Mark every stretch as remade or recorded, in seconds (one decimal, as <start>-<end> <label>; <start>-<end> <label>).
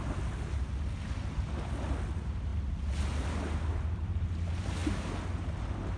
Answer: 0.0-6.0 recorded